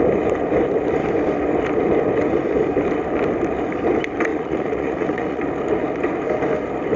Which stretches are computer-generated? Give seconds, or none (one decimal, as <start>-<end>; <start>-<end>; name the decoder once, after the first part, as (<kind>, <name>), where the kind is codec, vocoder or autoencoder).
4.3-5.4 (vocoder, Vocos)